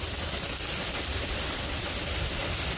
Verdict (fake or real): real